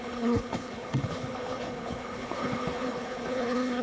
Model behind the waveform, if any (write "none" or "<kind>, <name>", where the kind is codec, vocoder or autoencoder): codec, HILCodec